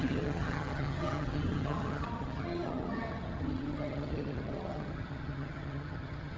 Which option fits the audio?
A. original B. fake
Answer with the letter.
B